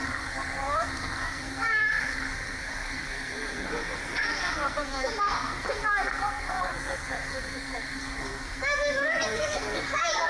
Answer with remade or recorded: remade